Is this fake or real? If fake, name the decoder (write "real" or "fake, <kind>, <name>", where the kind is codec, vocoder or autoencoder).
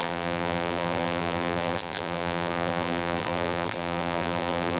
fake, vocoder, BigVGAN v2